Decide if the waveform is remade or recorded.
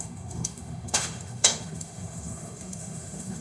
remade